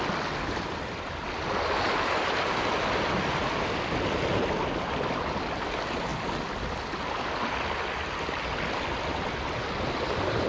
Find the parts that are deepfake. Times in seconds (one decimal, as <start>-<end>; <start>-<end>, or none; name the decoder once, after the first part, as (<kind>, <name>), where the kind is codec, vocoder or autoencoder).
none